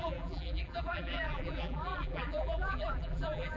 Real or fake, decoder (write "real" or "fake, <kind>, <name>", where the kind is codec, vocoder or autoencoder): fake, vocoder, BigVGAN v2